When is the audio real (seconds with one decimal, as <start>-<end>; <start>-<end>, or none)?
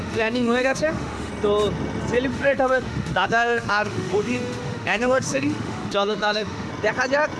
1.3-2.3; 6.7-7.4